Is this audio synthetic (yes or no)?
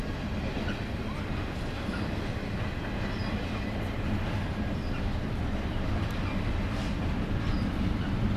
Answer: no